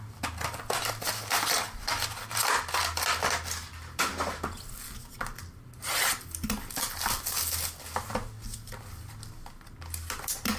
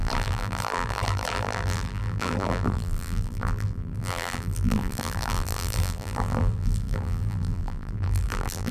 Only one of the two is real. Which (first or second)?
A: first